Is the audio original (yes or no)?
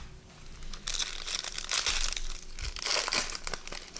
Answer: yes